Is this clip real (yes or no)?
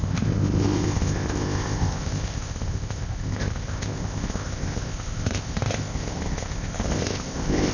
no